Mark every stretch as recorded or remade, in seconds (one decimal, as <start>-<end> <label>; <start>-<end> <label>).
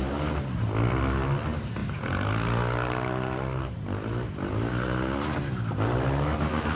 0.0-6.8 recorded